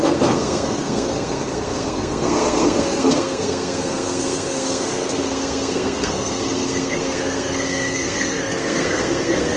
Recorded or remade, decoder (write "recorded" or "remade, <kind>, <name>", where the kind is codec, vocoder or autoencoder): remade, codec, SNAC